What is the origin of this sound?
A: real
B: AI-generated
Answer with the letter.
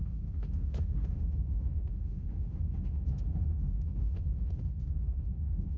B